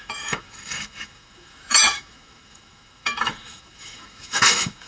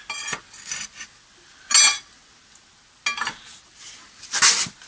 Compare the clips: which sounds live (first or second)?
second